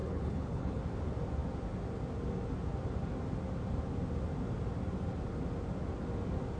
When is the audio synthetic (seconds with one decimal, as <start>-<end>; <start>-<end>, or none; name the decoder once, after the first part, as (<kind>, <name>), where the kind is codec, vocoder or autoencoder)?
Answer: 0.0-0.8 (codec, HILCodec)